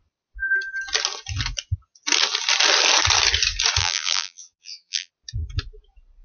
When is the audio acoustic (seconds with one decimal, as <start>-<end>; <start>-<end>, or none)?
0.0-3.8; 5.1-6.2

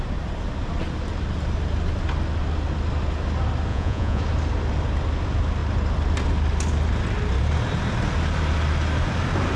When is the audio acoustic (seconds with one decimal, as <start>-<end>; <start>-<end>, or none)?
0.0-3.7; 4.2-9.6

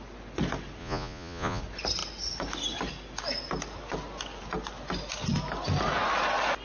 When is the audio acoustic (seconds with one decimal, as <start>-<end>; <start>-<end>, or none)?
0.0-0.8; 1.6-6.6